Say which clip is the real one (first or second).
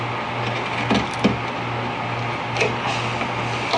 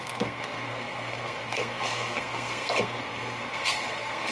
first